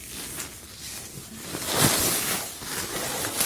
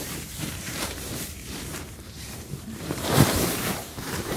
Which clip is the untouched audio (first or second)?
first